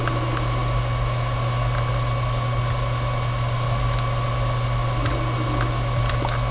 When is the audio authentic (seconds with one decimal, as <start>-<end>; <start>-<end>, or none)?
0.0-6.5